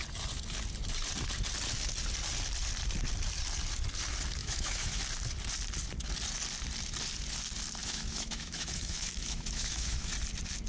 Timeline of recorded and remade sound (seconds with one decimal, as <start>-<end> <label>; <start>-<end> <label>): 0.0-4.4 recorded; 4.4-5.0 remade; 5.0-7.8 recorded; 7.8-10.1 remade; 10.1-10.7 recorded

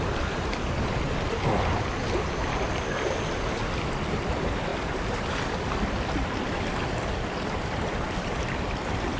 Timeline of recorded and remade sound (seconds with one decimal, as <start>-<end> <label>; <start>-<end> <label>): 0.0-9.2 recorded

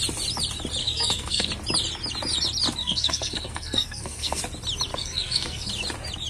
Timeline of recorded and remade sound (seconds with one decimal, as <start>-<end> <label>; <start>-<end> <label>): 0.0-0.8 recorded; 0.8-1.5 remade; 1.5-2.8 recorded; 2.8-4.4 remade; 4.4-4.9 recorded; 4.9-5.7 remade; 5.7-6.3 recorded

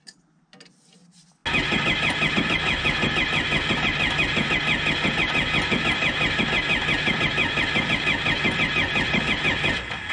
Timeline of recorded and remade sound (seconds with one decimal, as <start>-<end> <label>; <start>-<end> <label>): 0.0-10.1 recorded

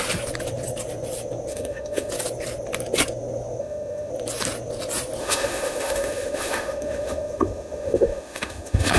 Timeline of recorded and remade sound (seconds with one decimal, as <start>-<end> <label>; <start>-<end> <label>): 0.0-1.5 recorded; 1.5-2.1 remade; 2.1-3.6 recorded; 3.6-4.1 remade; 4.1-5.2 recorded; 5.2-9.0 remade

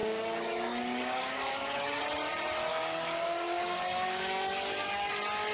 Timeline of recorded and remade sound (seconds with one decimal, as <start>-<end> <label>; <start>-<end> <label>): 0.0-2.0 remade; 2.0-2.7 recorded; 2.7-5.1 remade; 5.1-5.5 recorded